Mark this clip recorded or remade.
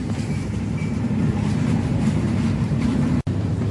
remade